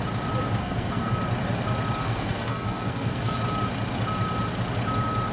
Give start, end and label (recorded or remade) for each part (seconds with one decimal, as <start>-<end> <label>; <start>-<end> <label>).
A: 0.0-0.6 recorded; 0.6-1.1 remade; 1.1-2.0 recorded; 2.0-3.4 remade; 3.4-5.3 recorded